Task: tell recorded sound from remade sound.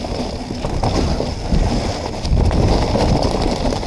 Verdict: recorded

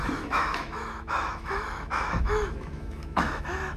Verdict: remade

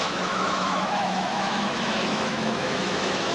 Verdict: remade